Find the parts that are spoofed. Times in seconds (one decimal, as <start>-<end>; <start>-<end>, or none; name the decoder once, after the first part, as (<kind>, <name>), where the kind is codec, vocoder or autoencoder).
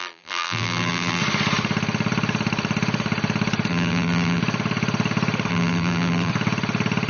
0.0-1.2 (vocoder, BigVGAN v2); 3.7-4.4; 5.5-6.3